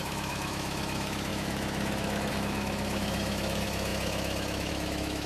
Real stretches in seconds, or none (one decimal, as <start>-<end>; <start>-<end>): none